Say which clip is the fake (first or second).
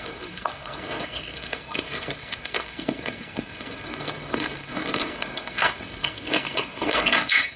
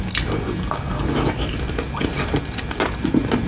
first